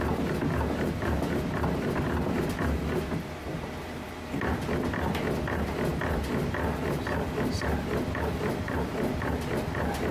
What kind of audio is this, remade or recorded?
recorded